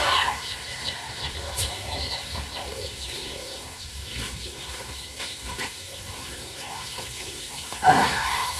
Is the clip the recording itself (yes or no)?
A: no